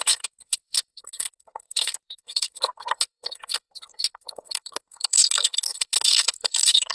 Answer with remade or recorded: remade